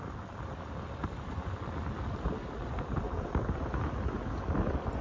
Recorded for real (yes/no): yes